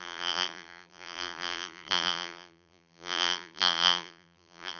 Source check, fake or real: fake